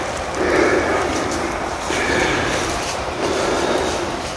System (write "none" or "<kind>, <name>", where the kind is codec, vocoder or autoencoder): none